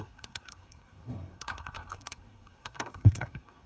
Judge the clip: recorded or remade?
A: remade